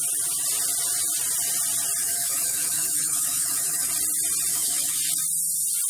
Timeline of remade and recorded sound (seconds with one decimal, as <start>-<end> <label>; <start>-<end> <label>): 0.0-2.0 recorded; 2.0-3.9 remade; 3.9-4.5 recorded; 4.5-5.0 remade; 5.0-5.9 recorded